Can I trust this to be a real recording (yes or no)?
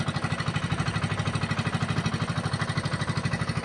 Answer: yes